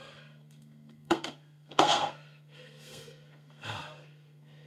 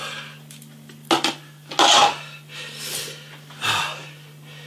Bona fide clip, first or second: second